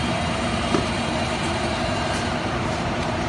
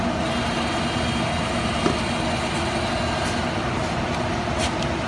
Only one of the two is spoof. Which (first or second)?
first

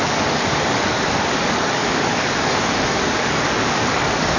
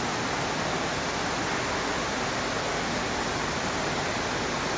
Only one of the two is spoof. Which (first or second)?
first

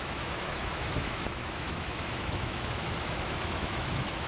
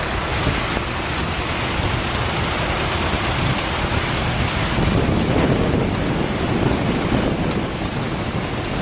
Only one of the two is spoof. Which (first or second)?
first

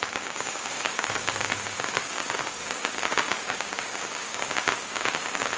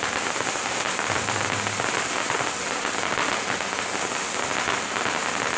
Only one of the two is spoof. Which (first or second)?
first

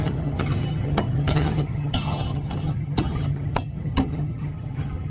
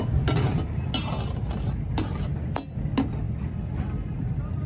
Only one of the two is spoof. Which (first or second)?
first